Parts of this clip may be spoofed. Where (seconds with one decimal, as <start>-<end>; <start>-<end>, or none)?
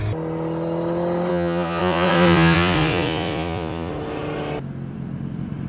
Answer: 1.3-3.9